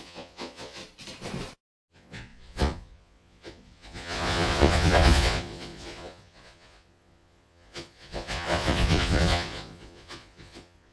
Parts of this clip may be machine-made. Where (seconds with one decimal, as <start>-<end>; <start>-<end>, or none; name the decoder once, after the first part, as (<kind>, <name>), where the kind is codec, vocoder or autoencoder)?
0.0-0.8 (vocoder, Vocos); 1.9-10.9